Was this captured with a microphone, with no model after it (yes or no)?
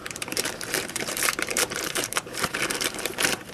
no